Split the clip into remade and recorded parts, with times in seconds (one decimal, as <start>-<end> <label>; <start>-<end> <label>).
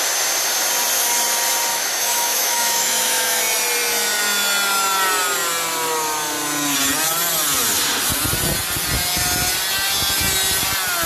0.0-1.7 recorded; 1.7-3.4 remade; 3.4-11.1 recorded